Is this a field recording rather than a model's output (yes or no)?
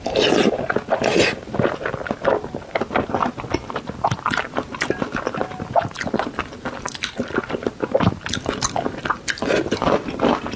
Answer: yes